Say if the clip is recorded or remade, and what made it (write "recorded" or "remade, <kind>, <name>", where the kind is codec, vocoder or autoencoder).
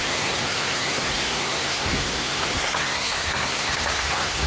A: remade, codec, SNAC